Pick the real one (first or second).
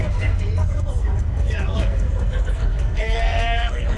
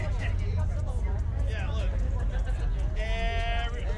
second